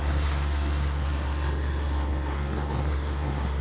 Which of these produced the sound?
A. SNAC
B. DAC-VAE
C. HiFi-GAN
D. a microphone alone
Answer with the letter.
A